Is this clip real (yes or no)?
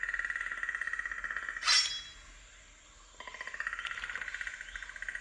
yes